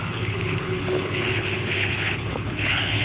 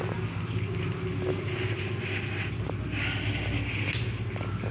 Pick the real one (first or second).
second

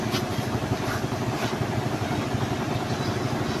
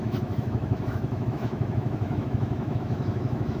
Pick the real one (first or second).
first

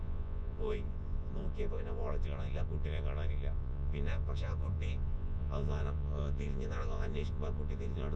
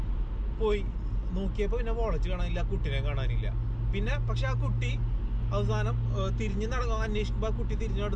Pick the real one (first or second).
second